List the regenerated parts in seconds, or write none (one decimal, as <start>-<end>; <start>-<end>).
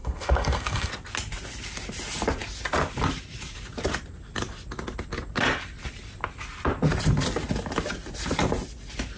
0.0-0.9